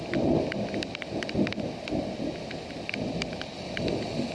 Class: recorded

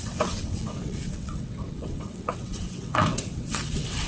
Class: remade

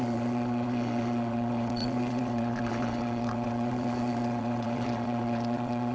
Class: remade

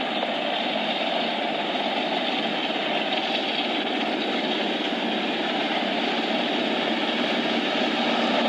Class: recorded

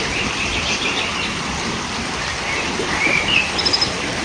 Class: recorded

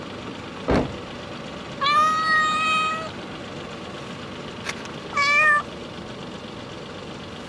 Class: recorded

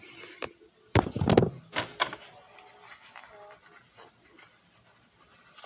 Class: recorded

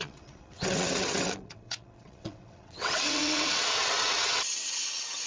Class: remade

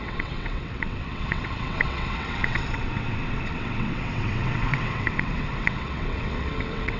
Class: remade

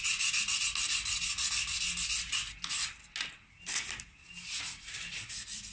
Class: recorded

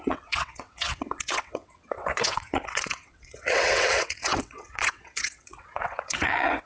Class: remade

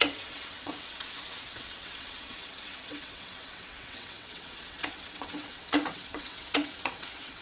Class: remade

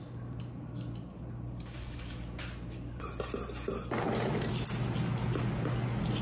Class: recorded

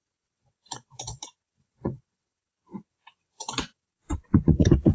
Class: remade